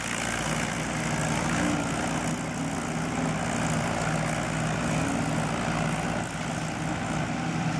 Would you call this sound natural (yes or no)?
yes